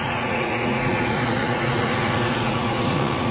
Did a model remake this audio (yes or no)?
yes